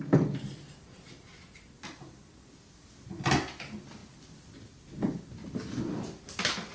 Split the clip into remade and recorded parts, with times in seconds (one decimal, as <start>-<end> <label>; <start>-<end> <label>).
0.0-6.7 recorded